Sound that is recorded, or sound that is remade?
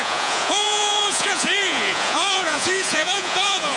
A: remade